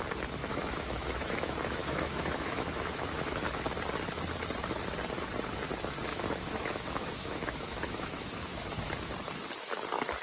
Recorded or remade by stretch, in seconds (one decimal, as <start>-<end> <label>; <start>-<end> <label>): 0.0-0.4 recorded; 0.4-3.6 remade; 3.6-6.1 recorded; 6.1-8.9 remade; 8.9-10.2 recorded